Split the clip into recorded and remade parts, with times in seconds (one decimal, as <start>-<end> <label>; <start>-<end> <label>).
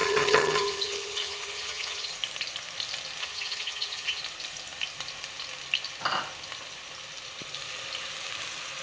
0.0-2.1 remade; 2.1-3.2 recorded; 3.2-4.2 remade; 4.2-8.8 recorded